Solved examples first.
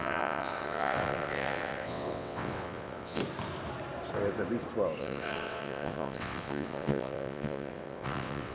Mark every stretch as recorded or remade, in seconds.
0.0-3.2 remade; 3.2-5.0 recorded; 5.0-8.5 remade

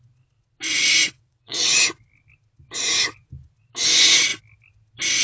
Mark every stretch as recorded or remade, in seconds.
0.0-1.0 recorded; 1.0-1.8 remade; 1.8-5.2 recorded

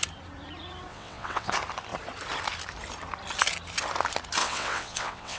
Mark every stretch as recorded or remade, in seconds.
0.0-0.9 recorded; 0.9-1.5 remade; 1.5-4.4 recorded; 4.4-5.4 remade

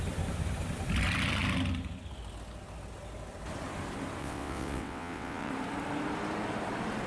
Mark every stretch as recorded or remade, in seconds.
0.0-4.2 recorded; 4.2-5.5 remade; 5.5-7.1 recorded

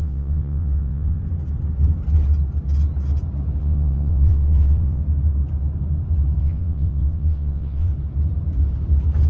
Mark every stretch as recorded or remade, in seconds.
0.0-1.2 remade; 1.2-3.6 recorded; 3.6-5.0 remade; 5.0-6.4 recorded; 6.4-7.9 remade; 7.9-9.3 recorded

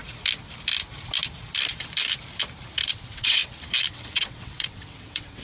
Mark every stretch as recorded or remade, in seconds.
0.0-2.9 recorded; 2.9-3.4 remade; 3.4-3.9 recorded; 3.9-5.4 remade